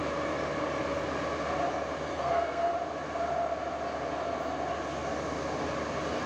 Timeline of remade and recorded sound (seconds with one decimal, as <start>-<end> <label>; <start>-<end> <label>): 0.0-2.1 recorded; 2.1-2.7 remade; 2.7-6.3 recorded